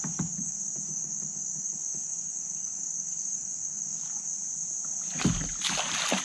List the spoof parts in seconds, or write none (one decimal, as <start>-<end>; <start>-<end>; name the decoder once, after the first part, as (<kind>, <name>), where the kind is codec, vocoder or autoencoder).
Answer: 0.0-4.3 (codec, DAC)